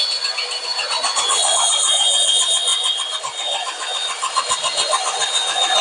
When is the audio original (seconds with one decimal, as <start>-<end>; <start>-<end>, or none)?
0.0-5.8